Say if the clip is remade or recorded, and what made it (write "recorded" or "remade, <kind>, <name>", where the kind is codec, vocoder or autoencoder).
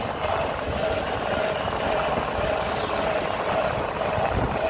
recorded